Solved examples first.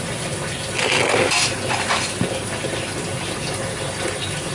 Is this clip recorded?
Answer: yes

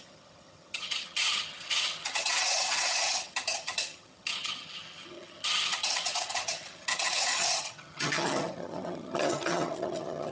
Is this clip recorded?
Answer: no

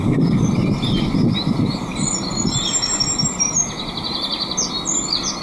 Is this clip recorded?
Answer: yes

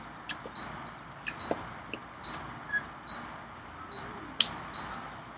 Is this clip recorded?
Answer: yes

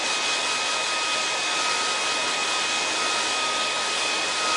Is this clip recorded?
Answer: yes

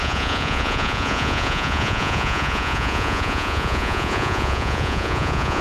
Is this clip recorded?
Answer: no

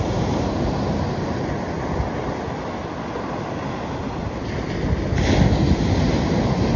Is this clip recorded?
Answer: yes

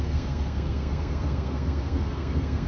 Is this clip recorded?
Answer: no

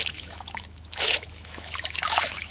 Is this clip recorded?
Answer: no